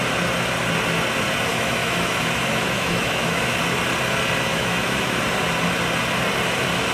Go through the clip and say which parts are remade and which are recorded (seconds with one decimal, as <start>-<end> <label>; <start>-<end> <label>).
0.0-1.5 recorded; 1.5-3.6 remade; 3.6-4.5 recorded; 4.5-5.2 remade; 5.2-6.9 recorded